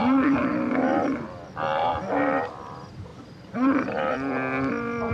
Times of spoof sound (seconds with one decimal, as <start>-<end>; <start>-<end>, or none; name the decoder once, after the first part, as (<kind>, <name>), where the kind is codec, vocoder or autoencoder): 0.0-5.1 (vocoder, BigVGAN v2)